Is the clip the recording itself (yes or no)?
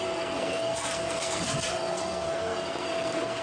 no